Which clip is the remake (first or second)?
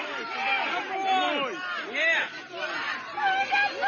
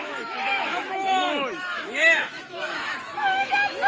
second